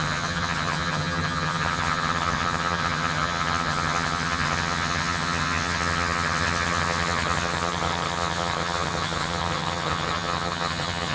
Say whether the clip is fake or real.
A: fake